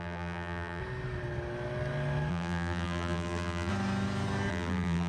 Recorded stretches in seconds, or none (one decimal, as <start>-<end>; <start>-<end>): 0.8-2.3; 3.7-4.5